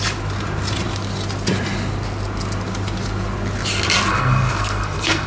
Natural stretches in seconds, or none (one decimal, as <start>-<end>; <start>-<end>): 0.0-4.1